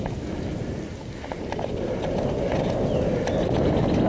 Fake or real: real